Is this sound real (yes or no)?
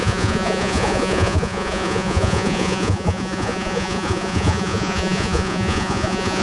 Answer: no